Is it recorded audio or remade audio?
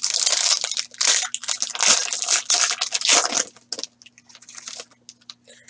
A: recorded